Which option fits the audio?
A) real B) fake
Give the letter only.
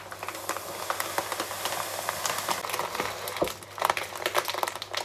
A